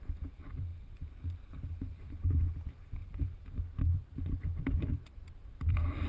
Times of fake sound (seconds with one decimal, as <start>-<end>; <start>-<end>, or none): 0.0-6.1